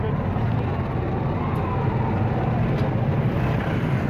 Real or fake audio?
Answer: real